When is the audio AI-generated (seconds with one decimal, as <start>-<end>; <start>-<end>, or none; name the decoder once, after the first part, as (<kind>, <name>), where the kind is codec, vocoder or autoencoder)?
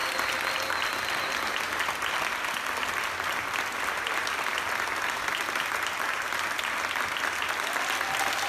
none